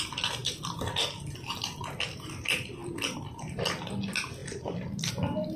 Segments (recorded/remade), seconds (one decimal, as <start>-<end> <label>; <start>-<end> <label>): 0.0-0.4 recorded; 0.4-1.0 remade; 1.0-2.8 recorded; 2.8-3.6 remade; 3.6-4.4 recorded; 4.4-5.1 remade; 5.1-5.6 recorded